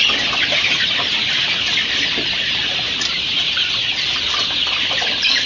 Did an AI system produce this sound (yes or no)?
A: no